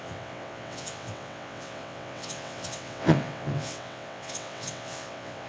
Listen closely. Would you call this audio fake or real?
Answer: fake